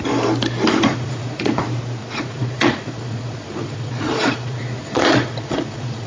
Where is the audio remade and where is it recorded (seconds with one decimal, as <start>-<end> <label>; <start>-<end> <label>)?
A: 0.0-0.9 recorded; 0.9-1.6 remade; 1.6-2.0 recorded; 2.0-6.1 remade